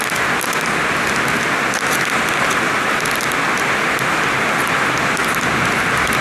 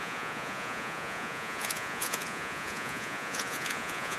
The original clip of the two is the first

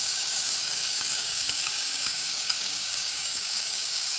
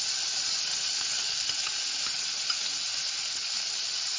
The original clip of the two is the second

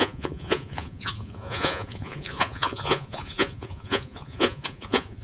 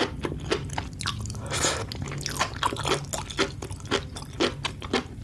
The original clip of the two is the second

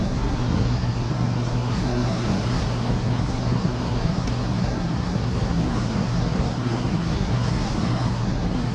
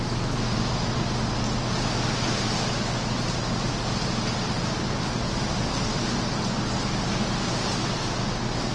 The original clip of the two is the second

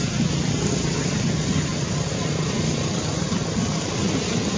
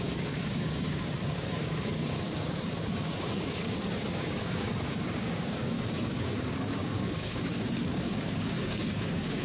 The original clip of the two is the first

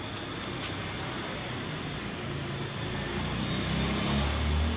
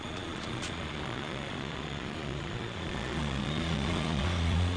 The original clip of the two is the first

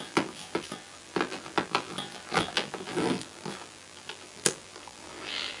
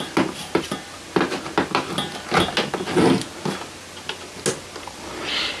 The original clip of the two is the second